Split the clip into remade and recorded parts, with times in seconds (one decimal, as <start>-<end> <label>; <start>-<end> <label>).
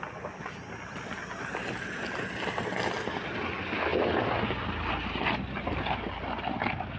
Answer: 0.0-7.0 recorded